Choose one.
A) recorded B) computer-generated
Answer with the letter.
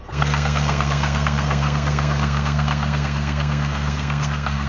B